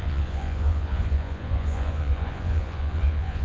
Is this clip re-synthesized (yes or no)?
yes